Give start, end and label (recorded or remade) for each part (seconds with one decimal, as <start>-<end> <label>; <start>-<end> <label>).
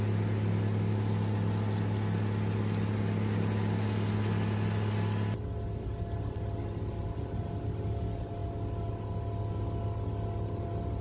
0.0-11.0 recorded